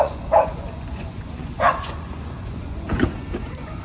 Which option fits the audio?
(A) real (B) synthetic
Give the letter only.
B